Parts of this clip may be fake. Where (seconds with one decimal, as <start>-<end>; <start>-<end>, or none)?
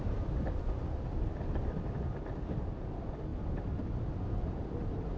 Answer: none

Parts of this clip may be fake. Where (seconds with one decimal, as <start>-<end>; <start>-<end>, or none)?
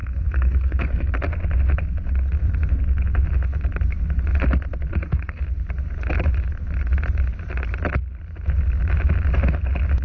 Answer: 0.0-1.1; 4.9-5.4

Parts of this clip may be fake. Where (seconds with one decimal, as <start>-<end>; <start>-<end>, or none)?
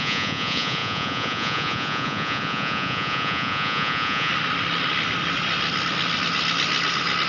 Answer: 0.0-4.3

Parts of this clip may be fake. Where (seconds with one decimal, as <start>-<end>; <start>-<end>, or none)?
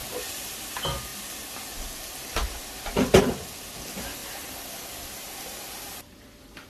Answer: 0.0-0.7; 4.2-6.7